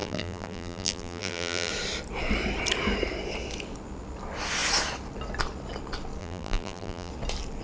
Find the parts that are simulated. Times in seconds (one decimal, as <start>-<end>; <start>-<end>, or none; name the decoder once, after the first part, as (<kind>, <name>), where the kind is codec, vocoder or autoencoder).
0.0-1.7 (vocoder, BigVGAN v2); 6.2-7.1

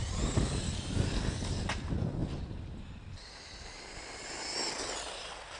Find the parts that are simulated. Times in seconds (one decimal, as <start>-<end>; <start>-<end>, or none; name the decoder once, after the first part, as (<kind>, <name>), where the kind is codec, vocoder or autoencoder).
2.2-3.8 (vocoder, BigVGAN v2)

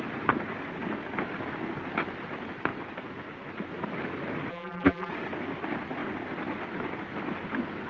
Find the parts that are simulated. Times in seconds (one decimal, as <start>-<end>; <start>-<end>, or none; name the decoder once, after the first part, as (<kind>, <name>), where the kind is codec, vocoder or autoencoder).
4.5-5.1 (vocoder, BigVGAN v2)

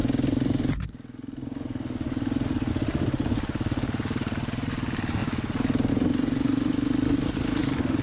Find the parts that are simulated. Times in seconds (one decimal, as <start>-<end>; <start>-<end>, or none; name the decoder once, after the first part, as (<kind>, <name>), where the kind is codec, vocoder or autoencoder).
none